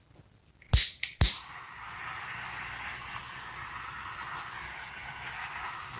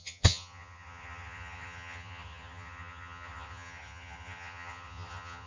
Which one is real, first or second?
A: first